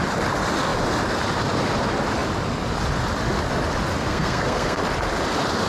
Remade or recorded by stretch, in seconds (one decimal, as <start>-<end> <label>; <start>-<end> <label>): 0.0-3.9 recorded; 3.9-4.8 remade; 4.8-5.7 recorded